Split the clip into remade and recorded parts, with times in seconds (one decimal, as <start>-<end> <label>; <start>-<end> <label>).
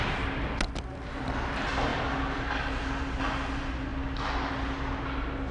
0.0-5.5 recorded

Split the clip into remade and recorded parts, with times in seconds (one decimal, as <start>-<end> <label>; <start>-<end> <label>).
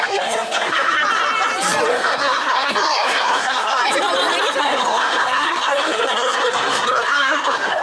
0.0-1.0 remade; 1.0-1.9 recorded; 1.9-3.8 remade; 3.8-4.6 recorded; 4.6-7.8 remade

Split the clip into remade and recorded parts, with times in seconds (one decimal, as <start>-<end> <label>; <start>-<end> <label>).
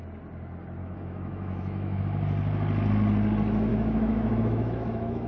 0.0-0.8 recorded; 0.8-2.0 remade; 2.0-3.7 recorded; 3.7-5.3 remade